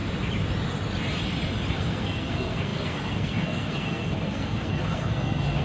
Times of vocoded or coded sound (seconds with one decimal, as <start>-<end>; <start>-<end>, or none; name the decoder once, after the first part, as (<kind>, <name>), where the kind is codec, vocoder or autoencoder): 1.7-5.6 (codec, SNAC)